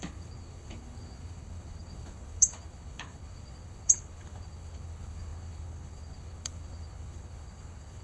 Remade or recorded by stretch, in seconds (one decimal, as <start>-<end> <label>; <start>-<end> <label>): 0.0-8.0 remade